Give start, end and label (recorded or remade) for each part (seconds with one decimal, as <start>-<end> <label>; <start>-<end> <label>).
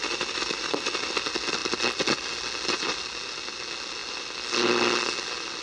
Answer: 0.0-5.6 recorded